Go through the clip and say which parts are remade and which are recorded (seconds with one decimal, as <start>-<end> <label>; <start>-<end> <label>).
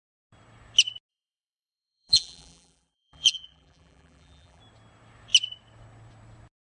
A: 0.0-1.1 recorded; 1.1-4.6 remade; 4.6-6.7 recorded